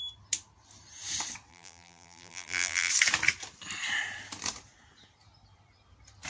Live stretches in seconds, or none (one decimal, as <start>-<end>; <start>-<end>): 0.0-1.5; 2.9-6.3